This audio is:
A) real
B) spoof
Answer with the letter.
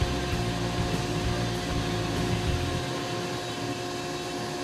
A